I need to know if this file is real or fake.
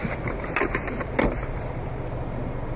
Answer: real